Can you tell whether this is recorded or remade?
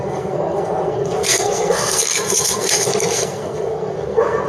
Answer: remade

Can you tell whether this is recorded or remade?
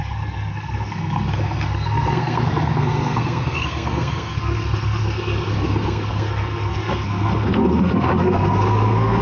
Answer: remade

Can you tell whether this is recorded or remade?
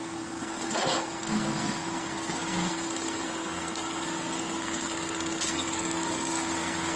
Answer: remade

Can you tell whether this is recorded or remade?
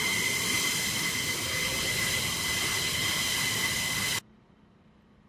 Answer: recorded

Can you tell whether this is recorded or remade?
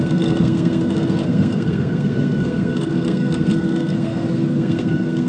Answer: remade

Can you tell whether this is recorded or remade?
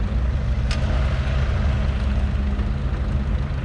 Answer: recorded